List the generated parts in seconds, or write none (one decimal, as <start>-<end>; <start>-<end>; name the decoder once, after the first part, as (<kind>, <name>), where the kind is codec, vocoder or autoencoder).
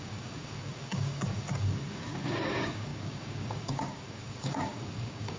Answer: 0.0-5.4 (codec, DAC)